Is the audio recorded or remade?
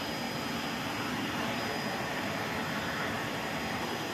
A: recorded